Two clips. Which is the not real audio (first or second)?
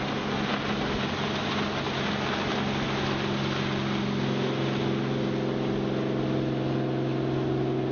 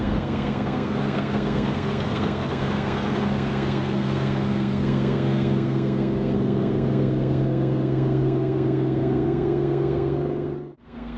second